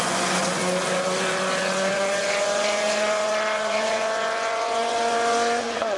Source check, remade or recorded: remade